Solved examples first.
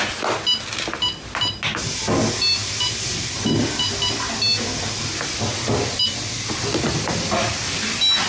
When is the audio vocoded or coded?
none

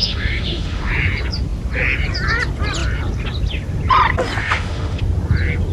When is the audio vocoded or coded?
0.0-0.9; 4.4-5.0

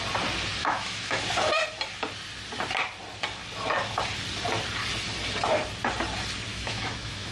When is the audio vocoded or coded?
0.6-1.2; 6.5-7.3